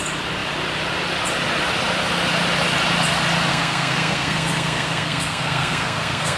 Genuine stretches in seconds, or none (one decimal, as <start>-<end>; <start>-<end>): 0.0-3.5